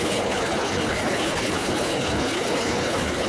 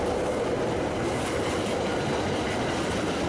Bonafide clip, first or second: second